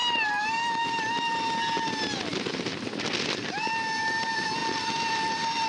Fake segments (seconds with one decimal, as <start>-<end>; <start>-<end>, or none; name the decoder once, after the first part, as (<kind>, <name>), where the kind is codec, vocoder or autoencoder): none